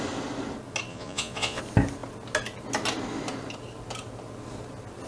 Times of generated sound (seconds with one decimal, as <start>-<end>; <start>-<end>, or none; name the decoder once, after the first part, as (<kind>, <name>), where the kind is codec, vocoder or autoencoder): 0.9-1.6 (vocoder, Vocos)